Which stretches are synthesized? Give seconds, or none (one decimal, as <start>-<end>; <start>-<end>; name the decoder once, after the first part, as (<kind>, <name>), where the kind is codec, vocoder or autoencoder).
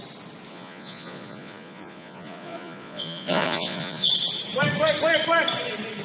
0.5-4.1 (vocoder, Vocos)